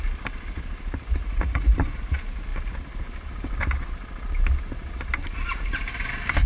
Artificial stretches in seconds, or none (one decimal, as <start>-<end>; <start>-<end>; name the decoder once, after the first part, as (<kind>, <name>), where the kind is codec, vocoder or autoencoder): 1.2-1.8 (vocoder, Vocos)